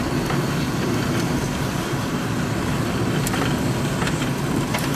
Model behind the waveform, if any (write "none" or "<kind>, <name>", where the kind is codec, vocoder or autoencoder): none